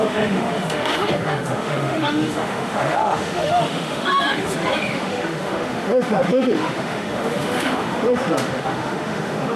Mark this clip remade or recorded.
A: remade